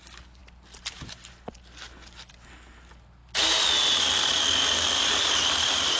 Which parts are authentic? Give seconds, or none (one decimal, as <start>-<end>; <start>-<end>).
0.0-6.0